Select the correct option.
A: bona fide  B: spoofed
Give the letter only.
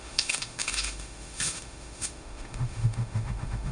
B